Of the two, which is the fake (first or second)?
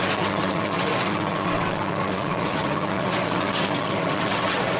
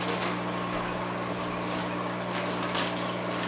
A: first